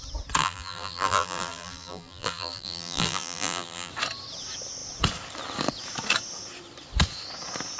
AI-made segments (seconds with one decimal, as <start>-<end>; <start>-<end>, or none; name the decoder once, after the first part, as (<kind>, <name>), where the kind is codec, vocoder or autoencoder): 0.4-3.9 (vocoder, BigVGAN v2)